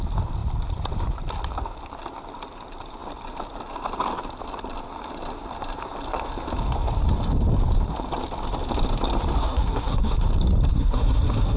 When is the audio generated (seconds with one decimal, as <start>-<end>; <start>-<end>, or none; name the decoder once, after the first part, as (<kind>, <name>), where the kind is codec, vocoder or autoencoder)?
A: 9.4-10.2 (codec, SNAC); 10.7-11.6